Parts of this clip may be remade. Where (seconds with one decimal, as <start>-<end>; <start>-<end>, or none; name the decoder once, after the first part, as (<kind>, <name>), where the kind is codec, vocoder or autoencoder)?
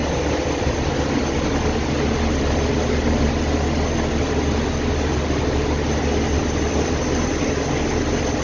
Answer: none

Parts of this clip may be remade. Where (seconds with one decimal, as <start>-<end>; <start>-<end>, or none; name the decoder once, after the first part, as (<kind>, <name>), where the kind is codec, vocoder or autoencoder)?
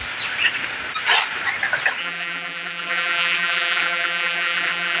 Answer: 2.0-5.0 (vocoder, BigVGAN v2)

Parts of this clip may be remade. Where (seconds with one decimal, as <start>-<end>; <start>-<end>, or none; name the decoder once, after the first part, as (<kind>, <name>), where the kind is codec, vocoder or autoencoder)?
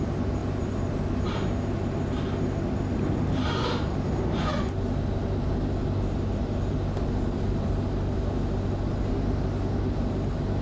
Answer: none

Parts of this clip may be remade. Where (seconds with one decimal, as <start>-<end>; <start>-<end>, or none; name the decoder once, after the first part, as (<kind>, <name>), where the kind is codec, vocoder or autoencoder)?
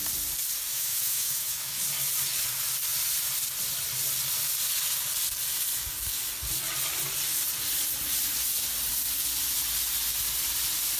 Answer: 0.7-1.8 (autoencoder, DAC-VAE)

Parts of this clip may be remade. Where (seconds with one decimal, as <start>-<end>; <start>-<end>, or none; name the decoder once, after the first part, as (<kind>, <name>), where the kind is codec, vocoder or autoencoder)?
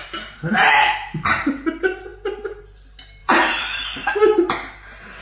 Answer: 0.0-1.3 (vocoder, BigVGAN v2); 3.2-4.2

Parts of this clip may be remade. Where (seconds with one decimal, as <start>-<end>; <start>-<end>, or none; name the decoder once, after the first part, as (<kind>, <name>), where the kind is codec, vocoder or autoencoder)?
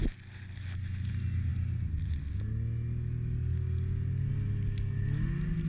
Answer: none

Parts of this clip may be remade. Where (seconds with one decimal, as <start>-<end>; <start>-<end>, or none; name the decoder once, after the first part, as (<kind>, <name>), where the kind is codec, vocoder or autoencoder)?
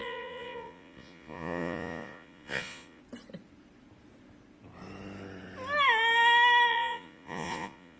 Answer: 0.0-3.0 (vocoder, Vocos); 6.7-8.0